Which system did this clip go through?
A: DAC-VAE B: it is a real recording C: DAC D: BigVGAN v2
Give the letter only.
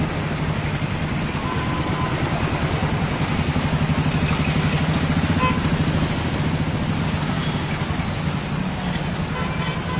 B